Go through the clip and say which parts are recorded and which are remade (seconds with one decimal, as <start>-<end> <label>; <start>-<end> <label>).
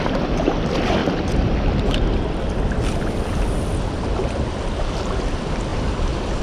0.0-1.0 recorded; 1.0-4.5 remade; 4.5-5.7 recorded; 5.7-6.4 remade